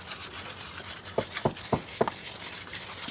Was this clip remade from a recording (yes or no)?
no